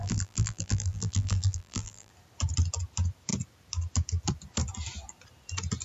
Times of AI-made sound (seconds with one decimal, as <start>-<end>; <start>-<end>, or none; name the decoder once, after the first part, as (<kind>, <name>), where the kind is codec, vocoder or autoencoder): 0.0-2.1 (vocoder, BigVGAN v2)